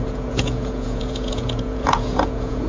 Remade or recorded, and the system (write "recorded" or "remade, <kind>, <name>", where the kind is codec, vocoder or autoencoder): remade, vocoder, Vocos